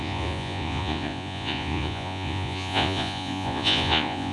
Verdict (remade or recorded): remade